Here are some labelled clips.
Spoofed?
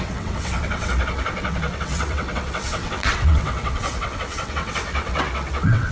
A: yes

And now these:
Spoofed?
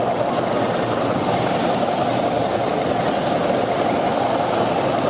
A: no